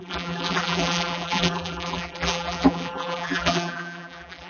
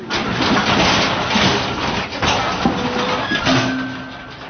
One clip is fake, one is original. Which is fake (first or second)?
first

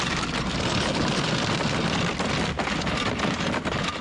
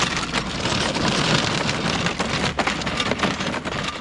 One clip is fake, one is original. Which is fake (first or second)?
first